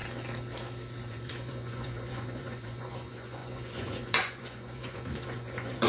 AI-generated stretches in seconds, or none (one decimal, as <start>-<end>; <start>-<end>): 1.1-5.9